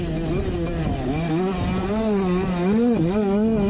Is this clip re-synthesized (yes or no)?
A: no